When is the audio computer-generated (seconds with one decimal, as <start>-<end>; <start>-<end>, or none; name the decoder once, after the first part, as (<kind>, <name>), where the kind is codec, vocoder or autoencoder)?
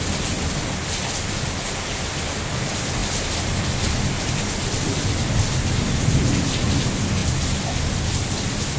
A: none